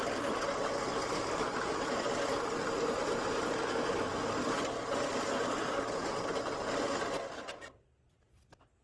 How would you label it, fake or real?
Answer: real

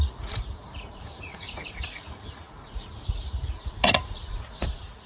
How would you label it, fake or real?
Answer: fake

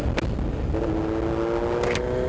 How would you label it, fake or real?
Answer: real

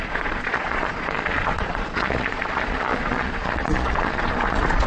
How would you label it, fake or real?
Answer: fake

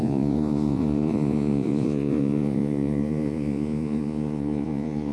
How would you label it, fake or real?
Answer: fake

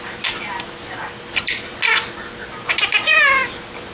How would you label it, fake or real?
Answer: real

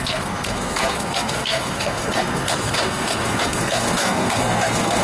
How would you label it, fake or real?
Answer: fake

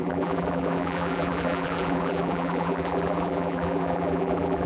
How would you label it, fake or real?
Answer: fake